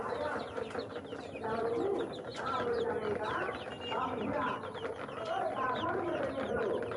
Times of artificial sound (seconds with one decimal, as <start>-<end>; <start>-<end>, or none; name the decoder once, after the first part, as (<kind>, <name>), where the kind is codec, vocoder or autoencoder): none

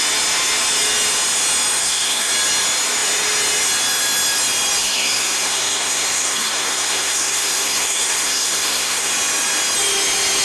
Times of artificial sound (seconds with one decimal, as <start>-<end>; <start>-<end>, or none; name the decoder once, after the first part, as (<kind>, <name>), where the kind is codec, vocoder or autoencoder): 1.8-2.3 (codec, SNAC); 4.8-9.1

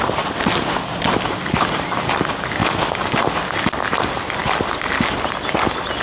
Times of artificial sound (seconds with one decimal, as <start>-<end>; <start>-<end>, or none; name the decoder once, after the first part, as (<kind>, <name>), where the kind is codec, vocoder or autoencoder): none

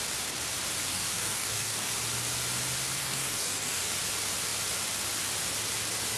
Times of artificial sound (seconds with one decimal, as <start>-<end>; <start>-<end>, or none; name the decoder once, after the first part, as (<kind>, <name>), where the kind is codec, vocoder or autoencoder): 0.9-1.9 (codec, DAC); 3.0-3.9

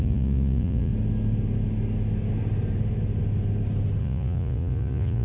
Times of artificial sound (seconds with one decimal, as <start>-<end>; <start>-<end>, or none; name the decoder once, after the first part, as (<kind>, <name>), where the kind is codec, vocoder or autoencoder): 0.0-0.9 (vocoder, Vocos); 4.0-5.2

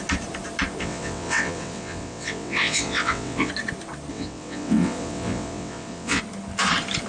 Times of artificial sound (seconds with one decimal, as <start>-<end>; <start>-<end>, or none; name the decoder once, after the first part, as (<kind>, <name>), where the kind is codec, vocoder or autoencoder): 0.8-3.5 (vocoder, WaveNeXt); 4.1-6.2

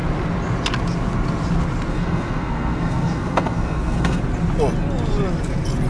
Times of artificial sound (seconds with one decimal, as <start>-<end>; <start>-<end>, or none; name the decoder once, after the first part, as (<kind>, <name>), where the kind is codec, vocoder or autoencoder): 1.9-4.2 (codec, SNAC)